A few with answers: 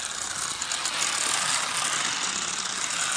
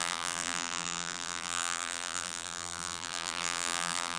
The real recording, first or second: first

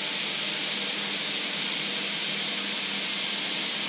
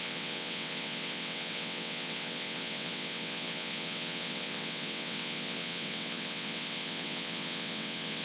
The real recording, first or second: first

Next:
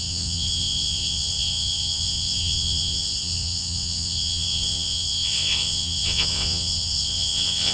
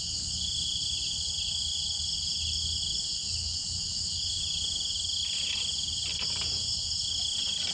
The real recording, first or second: second